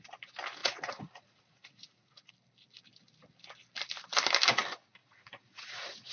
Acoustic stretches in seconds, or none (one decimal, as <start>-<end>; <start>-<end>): 0.0-0.6; 2.3-5.0